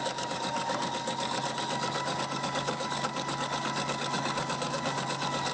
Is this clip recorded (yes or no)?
no